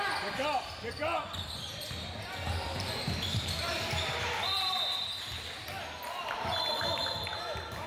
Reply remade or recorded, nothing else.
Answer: recorded